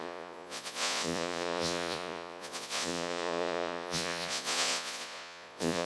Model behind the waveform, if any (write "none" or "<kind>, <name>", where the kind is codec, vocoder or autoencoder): vocoder, Vocos